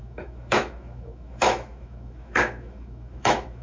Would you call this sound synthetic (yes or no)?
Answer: yes